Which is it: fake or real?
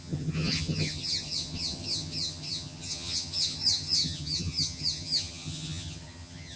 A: fake